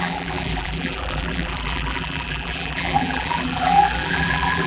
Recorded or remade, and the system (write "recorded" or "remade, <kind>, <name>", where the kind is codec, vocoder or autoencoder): remade, vocoder, BigVGAN v2